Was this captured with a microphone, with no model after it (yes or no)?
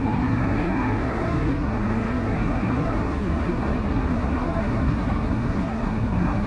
no